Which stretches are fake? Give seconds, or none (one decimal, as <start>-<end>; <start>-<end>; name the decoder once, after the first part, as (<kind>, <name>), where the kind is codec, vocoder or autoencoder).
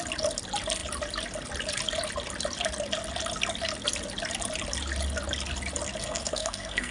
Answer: 6.0-6.9 (codec, SNAC)